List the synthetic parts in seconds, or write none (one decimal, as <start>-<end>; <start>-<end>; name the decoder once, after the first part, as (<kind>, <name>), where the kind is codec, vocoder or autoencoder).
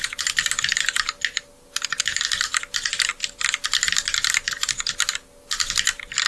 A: none